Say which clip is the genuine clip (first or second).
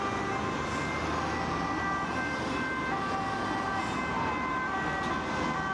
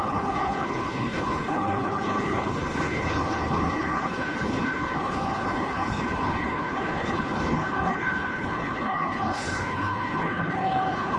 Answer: first